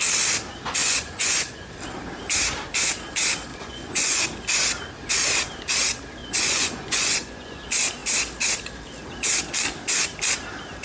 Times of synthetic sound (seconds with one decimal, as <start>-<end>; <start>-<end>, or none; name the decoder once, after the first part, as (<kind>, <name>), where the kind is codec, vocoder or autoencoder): 0.8-1.7 (vocoder, Vocos); 3.5-4.2; 6.2-7.6